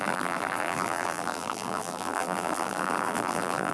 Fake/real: fake